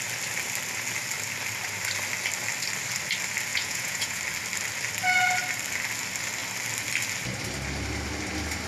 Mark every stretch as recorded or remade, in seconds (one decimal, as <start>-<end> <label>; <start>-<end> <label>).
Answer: 0.0-3.5 recorded; 3.5-4.2 remade; 4.2-8.7 recorded